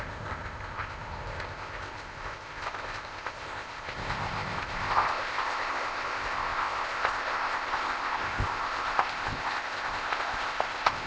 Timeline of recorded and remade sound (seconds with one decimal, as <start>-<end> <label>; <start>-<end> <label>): 0.0-11.1 remade